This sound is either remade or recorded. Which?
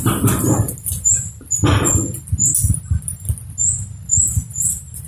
recorded